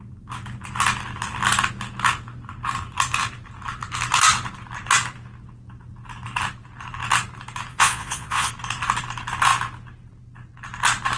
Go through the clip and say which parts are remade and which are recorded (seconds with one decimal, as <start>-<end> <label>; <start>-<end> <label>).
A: 0.0-7.7 recorded; 7.7-8.5 remade; 8.5-11.2 recorded